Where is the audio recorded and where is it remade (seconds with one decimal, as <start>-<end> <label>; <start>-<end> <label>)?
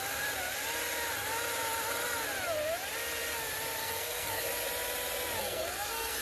0.0-3.8 recorded; 3.8-4.4 remade; 4.4-5.4 recorded; 5.4-6.2 remade